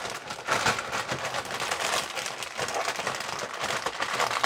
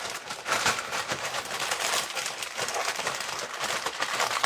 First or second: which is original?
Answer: first